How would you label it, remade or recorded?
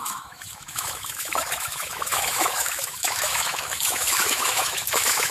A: remade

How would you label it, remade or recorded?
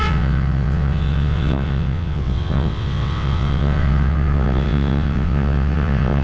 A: remade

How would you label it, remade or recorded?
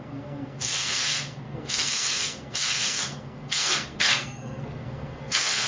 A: remade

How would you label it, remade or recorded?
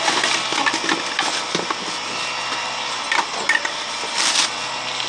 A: recorded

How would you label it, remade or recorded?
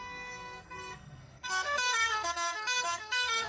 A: remade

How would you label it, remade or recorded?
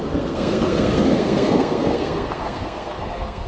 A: remade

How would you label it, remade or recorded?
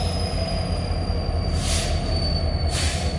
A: recorded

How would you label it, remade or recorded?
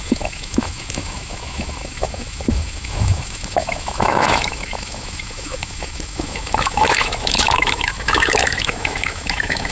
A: remade